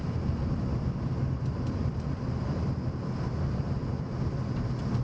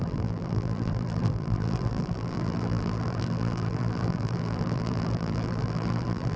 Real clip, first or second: first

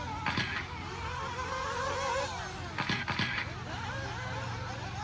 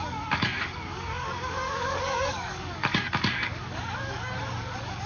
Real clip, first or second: first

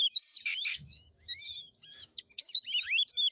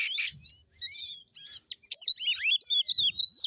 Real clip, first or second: second